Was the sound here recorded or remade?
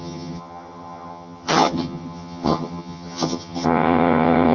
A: remade